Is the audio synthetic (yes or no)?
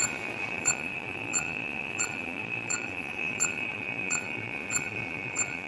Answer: yes